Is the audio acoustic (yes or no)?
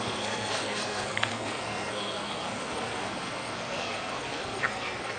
no